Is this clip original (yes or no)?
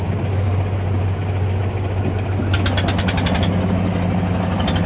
yes